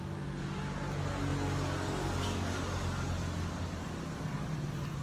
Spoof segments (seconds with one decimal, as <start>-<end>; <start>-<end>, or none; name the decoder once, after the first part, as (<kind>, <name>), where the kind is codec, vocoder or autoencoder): none